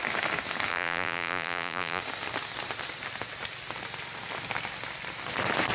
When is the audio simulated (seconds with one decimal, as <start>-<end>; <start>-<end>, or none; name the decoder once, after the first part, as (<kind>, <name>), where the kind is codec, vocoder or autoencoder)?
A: 0.7-2.0 (vocoder, BigVGAN v2)